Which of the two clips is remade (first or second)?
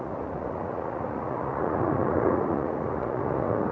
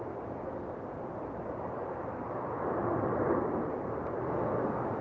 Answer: first